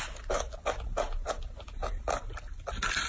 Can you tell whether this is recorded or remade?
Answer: recorded